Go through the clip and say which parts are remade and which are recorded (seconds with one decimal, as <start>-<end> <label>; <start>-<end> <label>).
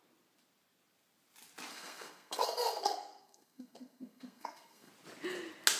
0.0-1.7 recorded; 1.7-4.9 remade; 4.9-5.8 recorded